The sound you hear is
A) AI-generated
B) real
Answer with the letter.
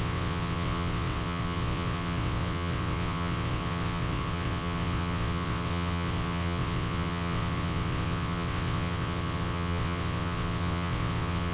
A